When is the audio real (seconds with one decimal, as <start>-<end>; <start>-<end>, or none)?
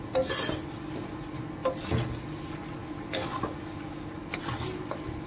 0.0-5.3